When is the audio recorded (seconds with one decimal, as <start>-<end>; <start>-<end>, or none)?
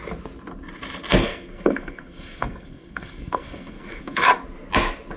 0.0-1.2; 4.3-5.2